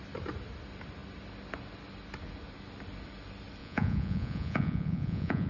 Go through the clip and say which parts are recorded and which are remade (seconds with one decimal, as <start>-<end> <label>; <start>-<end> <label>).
0.0-3.6 recorded; 3.6-5.5 remade